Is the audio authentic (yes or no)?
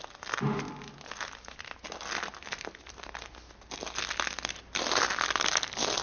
yes